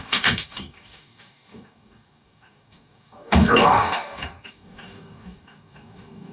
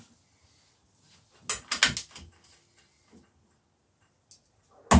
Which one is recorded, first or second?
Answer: second